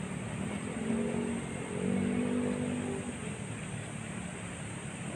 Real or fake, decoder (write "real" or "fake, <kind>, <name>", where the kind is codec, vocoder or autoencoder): real